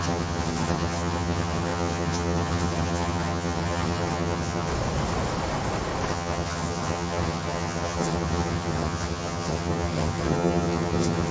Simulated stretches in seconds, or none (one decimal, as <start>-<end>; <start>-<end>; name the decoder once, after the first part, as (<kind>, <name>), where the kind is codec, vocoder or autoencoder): 0.0-4.7 (vocoder, HiFi-GAN); 6.1-11.3